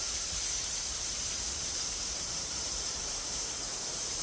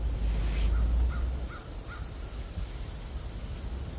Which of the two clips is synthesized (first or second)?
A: first